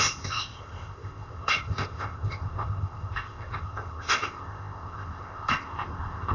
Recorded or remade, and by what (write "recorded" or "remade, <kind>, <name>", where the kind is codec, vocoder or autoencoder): remade, codec, ZipCodec